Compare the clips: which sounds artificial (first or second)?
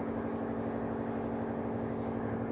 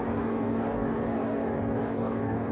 second